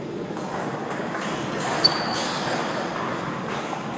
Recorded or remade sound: remade